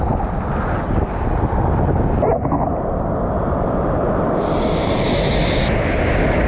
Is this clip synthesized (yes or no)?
no